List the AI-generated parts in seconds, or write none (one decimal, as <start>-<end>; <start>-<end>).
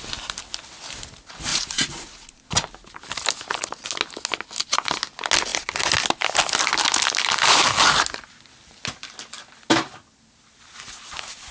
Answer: 1.5-2.4